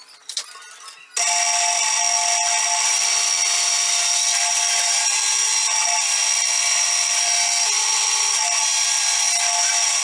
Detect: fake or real real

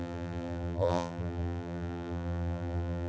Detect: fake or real fake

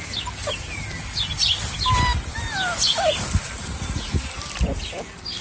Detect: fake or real real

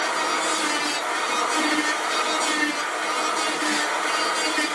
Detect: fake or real real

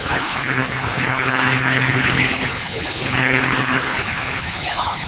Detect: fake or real fake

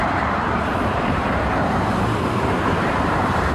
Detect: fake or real fake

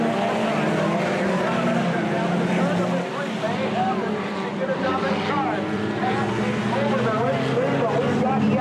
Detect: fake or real real